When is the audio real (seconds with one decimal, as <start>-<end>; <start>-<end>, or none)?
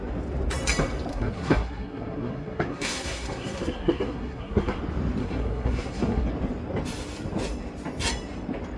0.0-1.1; 4.8-5.2; 6.3-8.8